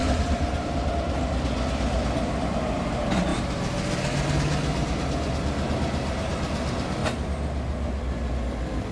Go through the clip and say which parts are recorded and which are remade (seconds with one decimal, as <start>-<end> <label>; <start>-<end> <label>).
0.0-0.9 remade; 0.9-8.9 recorded

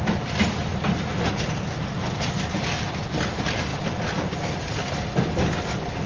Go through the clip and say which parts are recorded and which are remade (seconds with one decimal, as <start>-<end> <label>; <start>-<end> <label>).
0.0-6.1 recorded

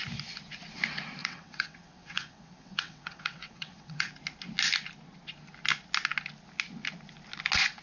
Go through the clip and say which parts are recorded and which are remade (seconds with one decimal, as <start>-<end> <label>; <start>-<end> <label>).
0.0-1.2 recorded; 1.2-4.1 remade; 4.1-7.8 recorded

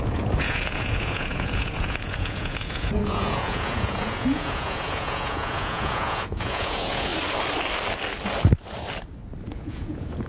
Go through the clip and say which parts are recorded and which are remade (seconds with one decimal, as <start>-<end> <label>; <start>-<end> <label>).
0.0-7.1 remade; 7.1-9.5 recorded; 9.5-10.3 remade

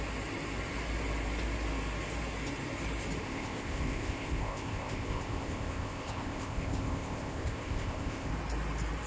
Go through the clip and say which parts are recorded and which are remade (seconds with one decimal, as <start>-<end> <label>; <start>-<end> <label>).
0.0-3.2 recorded; 3.2-8.3 remade; 8.3-9.1 recorded